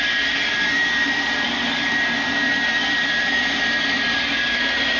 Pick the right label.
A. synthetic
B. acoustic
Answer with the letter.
A